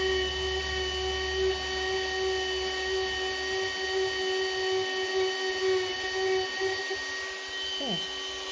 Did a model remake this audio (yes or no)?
no